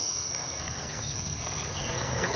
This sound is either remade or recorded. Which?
remade